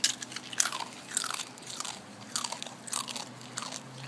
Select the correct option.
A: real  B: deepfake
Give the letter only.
A